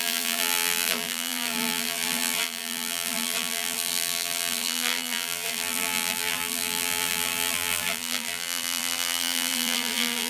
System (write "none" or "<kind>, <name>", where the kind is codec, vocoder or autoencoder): vocoder, BigVGAN v2